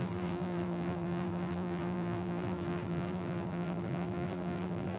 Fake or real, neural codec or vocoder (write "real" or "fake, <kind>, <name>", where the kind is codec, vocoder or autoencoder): fake, vocoder, BigVGAN v2